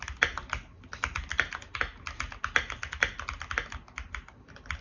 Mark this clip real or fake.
real